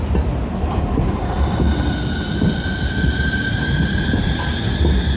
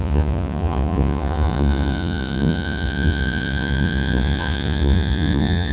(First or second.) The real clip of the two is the first